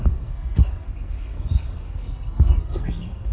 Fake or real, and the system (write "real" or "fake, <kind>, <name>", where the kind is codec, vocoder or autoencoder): fake, codec, SNAC